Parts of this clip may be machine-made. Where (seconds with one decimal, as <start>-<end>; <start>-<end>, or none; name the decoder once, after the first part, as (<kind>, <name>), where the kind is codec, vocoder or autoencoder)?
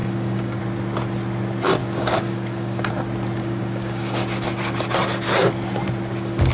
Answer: 0.0-0.6 (codec, DAC); 1.8-2.9; 3.4-4.3